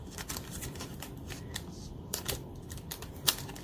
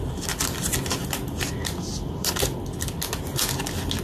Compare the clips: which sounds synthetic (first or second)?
first